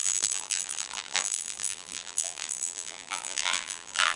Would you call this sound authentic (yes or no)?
no